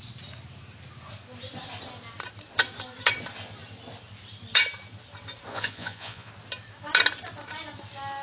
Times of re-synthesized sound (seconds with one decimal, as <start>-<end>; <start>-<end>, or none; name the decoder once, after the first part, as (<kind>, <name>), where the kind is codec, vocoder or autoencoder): 5.5-6.3 (vocoder, Vocos)